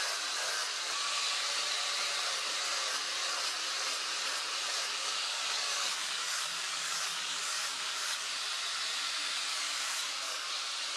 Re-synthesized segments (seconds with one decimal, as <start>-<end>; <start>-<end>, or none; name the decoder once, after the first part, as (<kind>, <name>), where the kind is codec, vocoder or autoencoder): 4.8-8.3 (codec, DAC); 9.5-10.5